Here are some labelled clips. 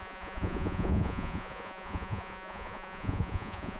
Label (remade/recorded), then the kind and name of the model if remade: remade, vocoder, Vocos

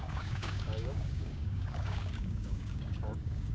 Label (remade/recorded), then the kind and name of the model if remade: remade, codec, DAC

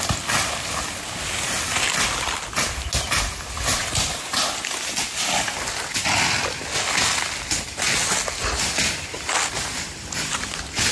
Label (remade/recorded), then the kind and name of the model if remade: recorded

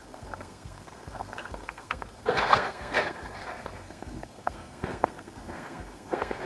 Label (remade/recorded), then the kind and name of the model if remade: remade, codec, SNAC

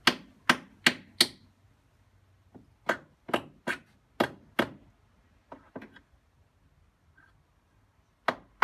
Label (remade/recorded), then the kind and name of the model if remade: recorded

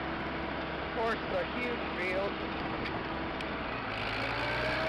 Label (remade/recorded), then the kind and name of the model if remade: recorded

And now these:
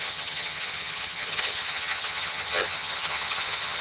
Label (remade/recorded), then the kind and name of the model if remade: remade, vocoder, HiFi-GAN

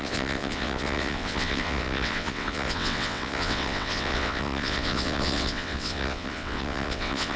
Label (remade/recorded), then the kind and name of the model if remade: remade, vocoder, WaveNeXt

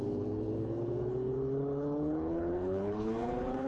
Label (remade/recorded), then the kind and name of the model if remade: remade, codec, HILCodec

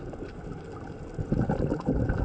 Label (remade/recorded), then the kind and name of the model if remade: recorded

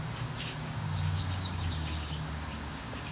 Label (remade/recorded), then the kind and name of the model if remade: remade, codec, DAC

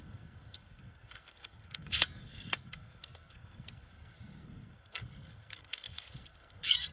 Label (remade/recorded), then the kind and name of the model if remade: remade, codec, SNAC